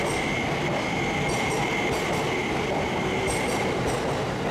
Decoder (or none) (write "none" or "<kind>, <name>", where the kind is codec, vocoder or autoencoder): vocoder, BigVGAN v2